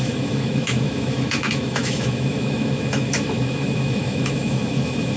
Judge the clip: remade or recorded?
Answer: remade